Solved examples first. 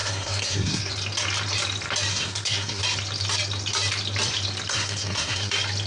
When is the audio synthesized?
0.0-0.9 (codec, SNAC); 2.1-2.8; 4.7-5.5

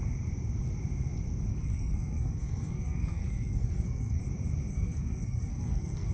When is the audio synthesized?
1.5-4.2 (codec, SNAC); 4.7-6.1

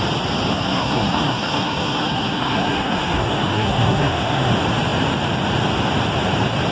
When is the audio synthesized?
0.5-4.5 (codec, SNAC)

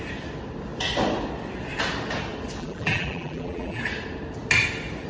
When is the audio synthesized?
2.6-3.8 (vocoder, BigVGAN v2)

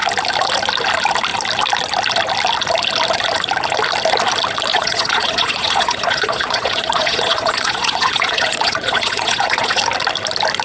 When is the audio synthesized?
4.7-9.8 (vocoder, Vocos)

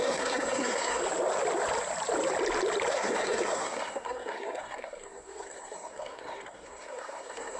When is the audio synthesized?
0.0-1.0 (codec, SNAC); 2.9-7.6

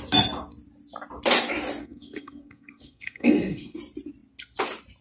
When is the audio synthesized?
1.8-3.8 (codec, SNAC)